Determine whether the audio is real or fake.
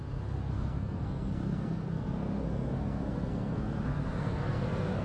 fake